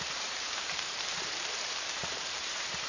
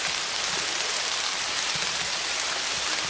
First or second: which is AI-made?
first